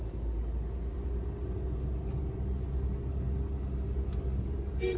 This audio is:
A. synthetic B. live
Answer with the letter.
B